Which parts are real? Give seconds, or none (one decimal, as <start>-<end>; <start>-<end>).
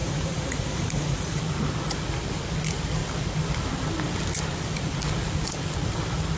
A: 1.4-6.4